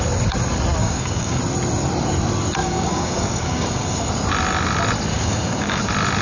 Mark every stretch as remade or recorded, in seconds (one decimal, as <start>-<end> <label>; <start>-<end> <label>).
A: 0.0-0.8 recorded; 0.8-1.4 remade; 1.4-2.6 recorded; 2.6-4.1 remade; 4.1-5.1 recorded; 5.1-5.8 remade; 5.8-6.2 recorded